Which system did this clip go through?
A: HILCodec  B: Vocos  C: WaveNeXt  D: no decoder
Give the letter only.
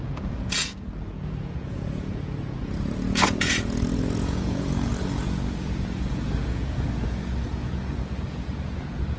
B